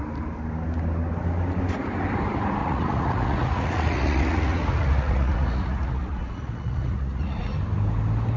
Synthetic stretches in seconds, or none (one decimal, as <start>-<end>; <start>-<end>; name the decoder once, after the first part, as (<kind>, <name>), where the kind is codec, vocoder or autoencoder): 2.6-7.4 (vocoder, Vocos)